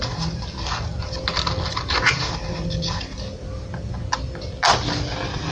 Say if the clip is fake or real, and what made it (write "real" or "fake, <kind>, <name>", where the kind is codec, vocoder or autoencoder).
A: real